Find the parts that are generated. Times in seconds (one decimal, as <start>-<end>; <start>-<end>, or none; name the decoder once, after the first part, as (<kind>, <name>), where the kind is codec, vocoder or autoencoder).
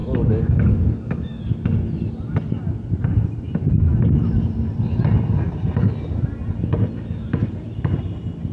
0.0-1.4 (codec, DAC)